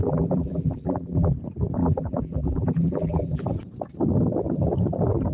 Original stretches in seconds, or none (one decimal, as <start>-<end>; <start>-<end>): 1.3-1.8; 3.4-5.3